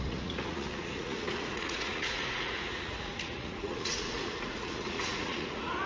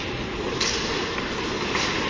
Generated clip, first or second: first